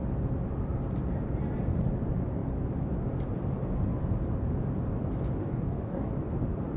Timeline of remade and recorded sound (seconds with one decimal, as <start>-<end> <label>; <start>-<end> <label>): 0.0-5.4 recorded; 5.4-6.1 remade; 6.1-6.8 recorded